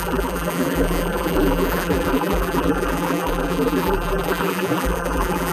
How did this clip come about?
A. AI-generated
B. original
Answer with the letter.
A